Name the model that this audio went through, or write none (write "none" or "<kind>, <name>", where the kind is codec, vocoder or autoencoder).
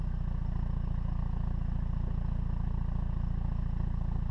none